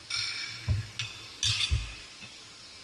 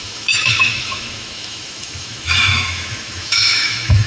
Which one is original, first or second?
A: first